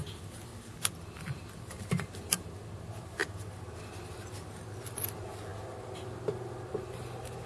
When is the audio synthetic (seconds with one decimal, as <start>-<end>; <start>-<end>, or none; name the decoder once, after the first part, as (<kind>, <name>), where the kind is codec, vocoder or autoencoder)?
none